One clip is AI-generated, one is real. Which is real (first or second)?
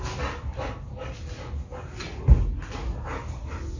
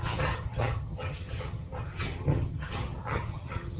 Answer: first